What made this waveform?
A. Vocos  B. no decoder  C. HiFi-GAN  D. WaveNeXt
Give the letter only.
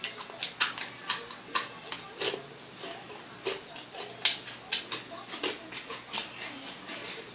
B